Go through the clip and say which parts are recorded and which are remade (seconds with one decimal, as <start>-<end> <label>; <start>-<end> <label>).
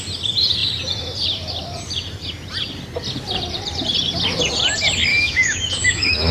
0.0-5.1 recorded; 5.1-6.3 remade